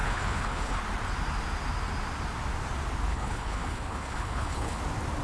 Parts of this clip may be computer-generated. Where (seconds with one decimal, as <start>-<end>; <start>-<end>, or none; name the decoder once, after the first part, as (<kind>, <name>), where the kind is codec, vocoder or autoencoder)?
0.0-0.8 (codec, HILCodec); 3.1-4.8

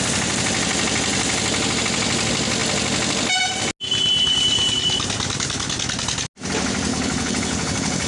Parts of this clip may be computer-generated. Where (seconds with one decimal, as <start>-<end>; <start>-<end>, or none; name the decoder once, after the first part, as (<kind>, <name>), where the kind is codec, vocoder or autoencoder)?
6.9-8.1 (codec, HILCodec)

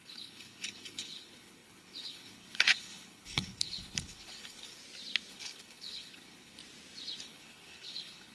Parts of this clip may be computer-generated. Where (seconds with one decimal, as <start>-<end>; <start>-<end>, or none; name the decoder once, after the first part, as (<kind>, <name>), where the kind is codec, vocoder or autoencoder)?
0.0-4.8 (codec, HILCodec); 5.3-6.6; 7.2-8.3

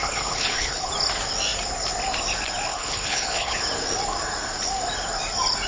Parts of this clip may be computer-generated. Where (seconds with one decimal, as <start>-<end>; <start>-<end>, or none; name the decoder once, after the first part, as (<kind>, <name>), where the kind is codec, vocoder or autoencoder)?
0.0-0.9 (codec, HILCodec); 2.7-3.6

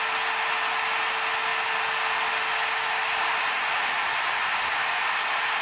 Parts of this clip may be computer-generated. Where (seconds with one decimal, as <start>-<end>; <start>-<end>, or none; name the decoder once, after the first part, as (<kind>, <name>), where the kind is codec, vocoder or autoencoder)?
none